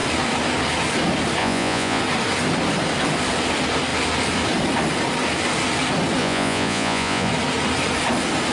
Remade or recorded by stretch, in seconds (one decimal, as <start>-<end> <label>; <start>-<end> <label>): 0.0-1.4 recorded; 1.4-2.0 remade; 2.0-6.2 recorded; 6.2-7.3 remade; 7.3-8.5 recorded